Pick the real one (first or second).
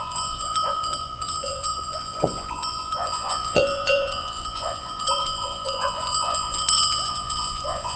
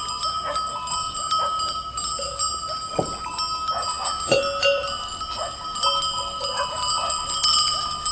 second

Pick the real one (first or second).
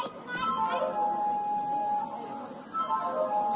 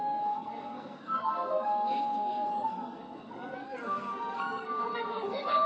first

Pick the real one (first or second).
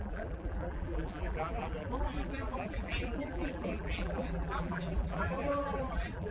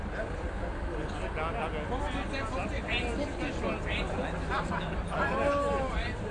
second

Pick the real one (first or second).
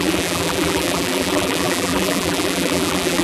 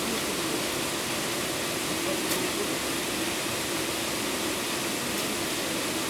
second